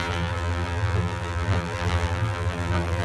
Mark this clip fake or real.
fake